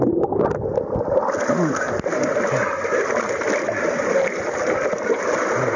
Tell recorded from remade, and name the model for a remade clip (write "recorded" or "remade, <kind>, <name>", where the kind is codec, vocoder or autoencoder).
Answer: recorded